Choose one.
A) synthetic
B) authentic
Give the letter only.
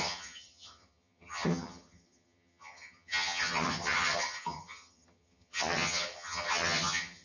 A